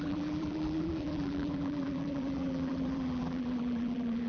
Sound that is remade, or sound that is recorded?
remade